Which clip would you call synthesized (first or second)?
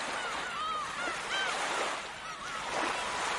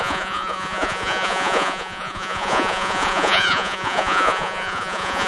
second